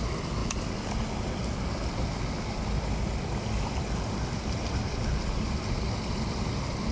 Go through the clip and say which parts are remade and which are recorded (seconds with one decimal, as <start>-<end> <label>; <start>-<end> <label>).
0.0-6.9 recorded